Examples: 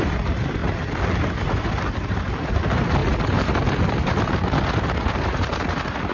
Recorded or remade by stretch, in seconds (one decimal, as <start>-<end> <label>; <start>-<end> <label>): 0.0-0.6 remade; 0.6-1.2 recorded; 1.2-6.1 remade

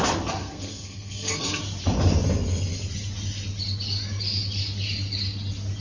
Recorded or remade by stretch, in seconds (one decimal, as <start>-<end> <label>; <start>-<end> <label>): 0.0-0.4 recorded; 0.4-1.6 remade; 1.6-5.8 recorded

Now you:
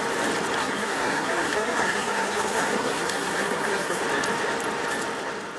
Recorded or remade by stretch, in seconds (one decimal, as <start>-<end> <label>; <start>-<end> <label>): 0.0-0.6 recorded; 0.6-4.0 remade; 4.0-5.6 recorded

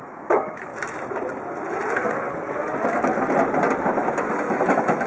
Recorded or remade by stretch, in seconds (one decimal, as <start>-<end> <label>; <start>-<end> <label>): 0.0-0.7 remade; 0.7-3.8 recorded; 3.8-5.1 remade